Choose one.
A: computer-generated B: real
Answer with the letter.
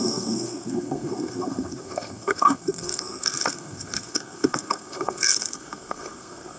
A